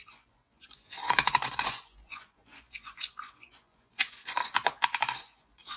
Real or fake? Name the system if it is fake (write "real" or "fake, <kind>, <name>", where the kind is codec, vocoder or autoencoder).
fake, vocoder, Vocos